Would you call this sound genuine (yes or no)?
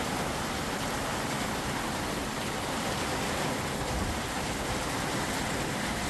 yes